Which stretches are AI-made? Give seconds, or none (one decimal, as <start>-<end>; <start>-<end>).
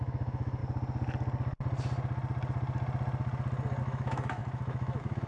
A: 0.0-0.6; 3.8-5.3